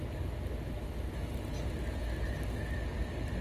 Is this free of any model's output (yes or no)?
yes